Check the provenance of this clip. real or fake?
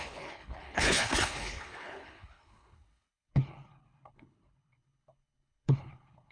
fake